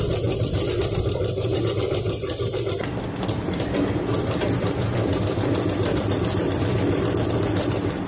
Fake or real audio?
fake